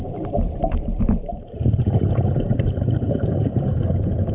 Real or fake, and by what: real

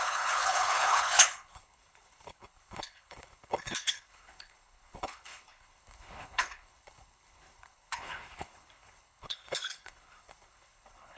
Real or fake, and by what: fake, codec, HILCodec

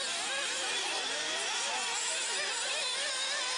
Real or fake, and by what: real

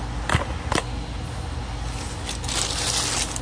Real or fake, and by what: real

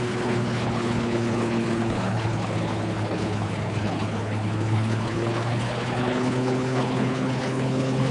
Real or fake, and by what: fake, codec, HILCodec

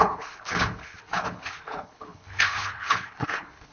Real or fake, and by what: fake, codec, HILCodec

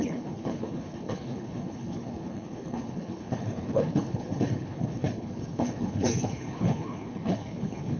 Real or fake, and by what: fake, codec, HILCodec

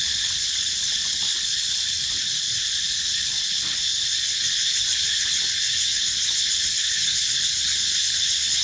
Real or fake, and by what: fake, codec, HILCodec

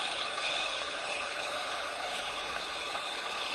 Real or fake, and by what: fake, codec, HILCodec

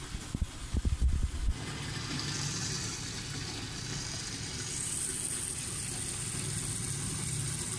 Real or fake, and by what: real